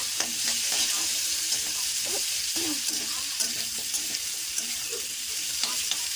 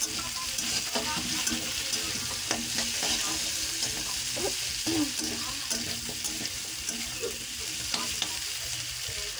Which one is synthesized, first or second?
first